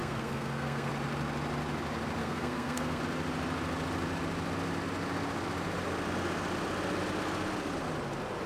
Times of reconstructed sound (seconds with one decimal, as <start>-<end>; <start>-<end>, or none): 0.0-0.9; 2.2-3.0